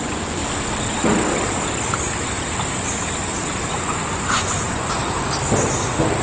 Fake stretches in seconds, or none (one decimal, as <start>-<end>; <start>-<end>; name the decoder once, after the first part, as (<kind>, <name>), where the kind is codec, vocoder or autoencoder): 0.0-0.4 (vocoder, Vocos); 3.7-5.0